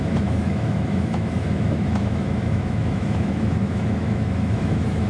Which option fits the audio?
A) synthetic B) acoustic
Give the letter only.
A